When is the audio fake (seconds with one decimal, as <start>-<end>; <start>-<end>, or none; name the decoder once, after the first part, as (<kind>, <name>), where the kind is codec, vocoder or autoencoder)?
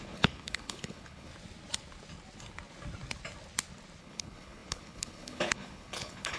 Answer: 0.0-1.3 (codec, HILCodec); 4.0-6.4